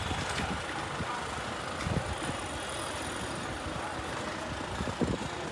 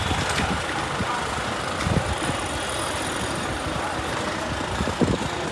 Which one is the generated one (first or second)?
second